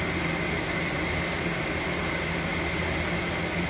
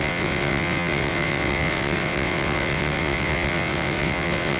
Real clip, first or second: first